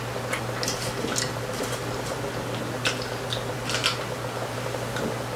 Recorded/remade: recorded